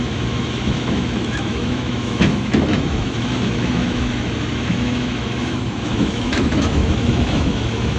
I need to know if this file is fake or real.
fake